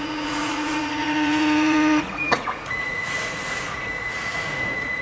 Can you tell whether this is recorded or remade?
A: remade